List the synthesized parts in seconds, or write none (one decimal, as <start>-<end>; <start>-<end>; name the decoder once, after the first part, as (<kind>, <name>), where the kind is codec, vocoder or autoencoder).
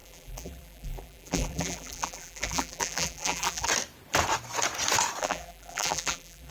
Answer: 0.0-3.7 (vocoder, BigVGAN v2); 5.2-6.5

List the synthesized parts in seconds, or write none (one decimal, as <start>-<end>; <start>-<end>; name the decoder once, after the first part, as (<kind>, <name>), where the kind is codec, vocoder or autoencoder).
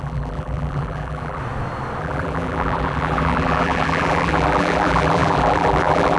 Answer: 0.0-1.4 (vocoder, BigVGAN v2); 2.0-6.2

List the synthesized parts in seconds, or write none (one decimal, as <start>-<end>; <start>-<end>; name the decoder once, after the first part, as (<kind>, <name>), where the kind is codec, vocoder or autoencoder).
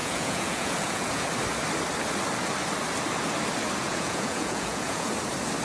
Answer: 0.0-1.3 (vocoder, Vocos); 3.8-5.1